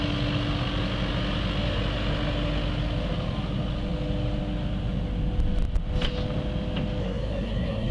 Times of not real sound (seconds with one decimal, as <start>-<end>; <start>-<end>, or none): 7.0-7.9